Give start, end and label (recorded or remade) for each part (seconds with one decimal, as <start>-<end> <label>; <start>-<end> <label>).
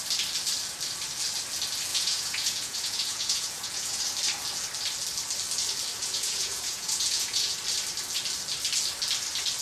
0.0-1.9 recorded; 1.9-4.0 remade; 4.0-6.0 recorded; 6.0-7.6 remade; 7.6-9.6 recorded